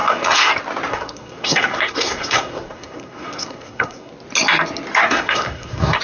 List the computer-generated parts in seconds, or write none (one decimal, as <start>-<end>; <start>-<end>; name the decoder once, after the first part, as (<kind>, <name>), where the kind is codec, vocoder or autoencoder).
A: 0.0-0.5 (codec, SNAC); 0.9-4.1; 5.0-6.0